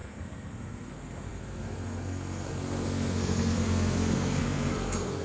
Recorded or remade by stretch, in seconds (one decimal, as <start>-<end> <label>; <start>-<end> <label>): 0.0-5.2 remade